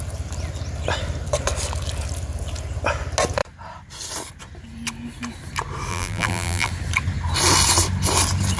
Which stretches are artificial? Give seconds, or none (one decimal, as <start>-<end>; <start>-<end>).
5.9-6.7